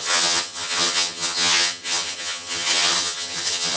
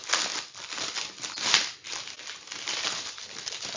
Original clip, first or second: second